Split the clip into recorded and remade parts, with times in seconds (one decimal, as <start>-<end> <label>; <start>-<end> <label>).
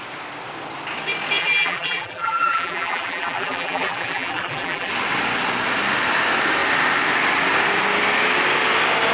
0.0-1.4 recorded; 1.4-4.9 remade; 4.9-9.1 recorded